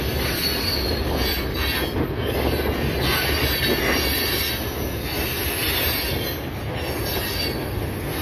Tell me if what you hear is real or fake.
real